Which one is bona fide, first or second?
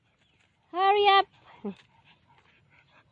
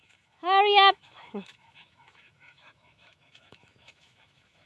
first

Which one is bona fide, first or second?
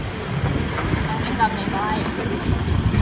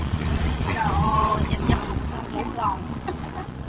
first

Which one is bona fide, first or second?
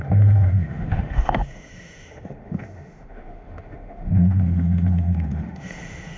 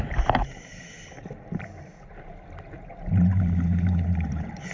second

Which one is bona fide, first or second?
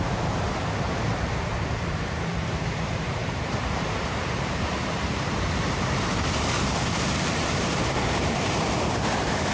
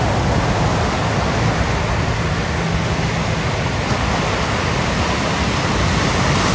second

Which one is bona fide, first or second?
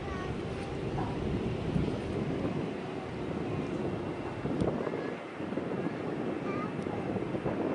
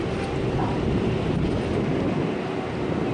second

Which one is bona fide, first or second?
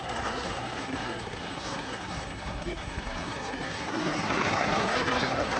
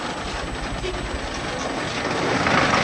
second